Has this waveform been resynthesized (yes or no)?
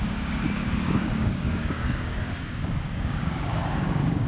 yes